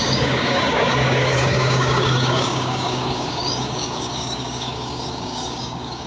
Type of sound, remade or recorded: remade